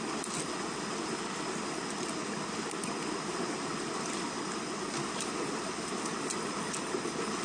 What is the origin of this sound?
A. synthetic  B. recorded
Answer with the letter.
B